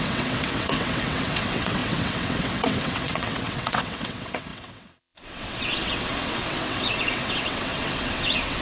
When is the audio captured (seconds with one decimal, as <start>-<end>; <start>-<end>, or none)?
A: none